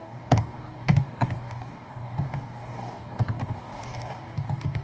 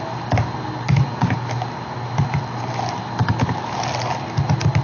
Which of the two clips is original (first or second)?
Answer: second